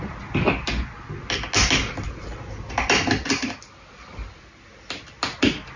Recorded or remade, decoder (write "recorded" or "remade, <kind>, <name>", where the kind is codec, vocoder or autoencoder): recorded